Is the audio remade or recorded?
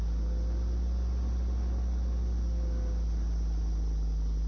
recorded